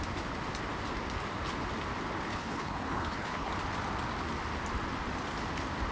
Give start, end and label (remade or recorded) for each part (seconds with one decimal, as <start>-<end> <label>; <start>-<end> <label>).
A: 0.0-2.3 recorded; 2.3-3.5 remade; 3.5-5.9 recorded